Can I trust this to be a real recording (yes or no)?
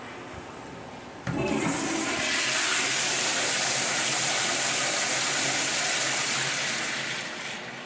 yes